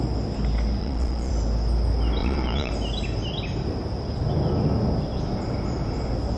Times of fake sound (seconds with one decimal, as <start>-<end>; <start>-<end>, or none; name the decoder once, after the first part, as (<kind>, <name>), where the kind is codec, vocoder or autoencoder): 0.8-1.3 (vocoder, Vocos); 2.2-2.7